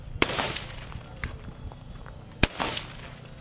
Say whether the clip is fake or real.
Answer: real